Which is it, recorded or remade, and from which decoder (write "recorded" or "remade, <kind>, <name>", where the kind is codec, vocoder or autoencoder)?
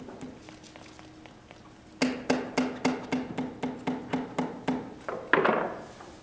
recorded